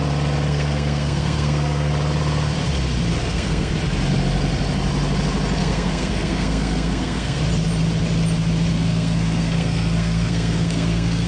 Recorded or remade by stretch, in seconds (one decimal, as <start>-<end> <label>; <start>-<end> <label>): 0.0-0.5 recorded; 0.5-1.9 remade; 1.9-3.1 recorded; 3.1-3.7 remade; 3.7-5.6 recorded; 5.6-7.4 remade; 7.4-8.7 recorded; 8.7-11.3 remade